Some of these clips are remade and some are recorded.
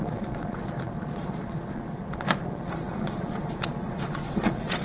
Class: remade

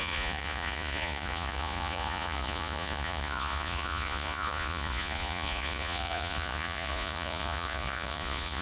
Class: remade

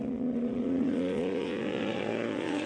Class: remade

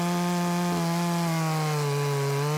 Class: recorded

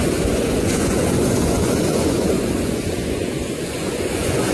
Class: remade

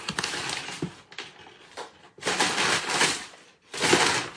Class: recorded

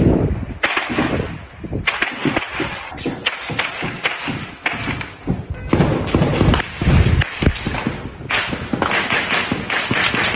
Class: recorded